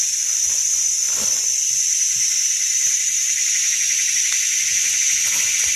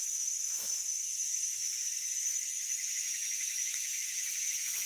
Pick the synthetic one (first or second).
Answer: second